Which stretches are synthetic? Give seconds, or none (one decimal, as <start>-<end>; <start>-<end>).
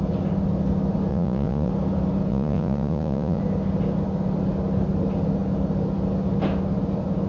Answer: 1.1-1.7; 2.3-3.4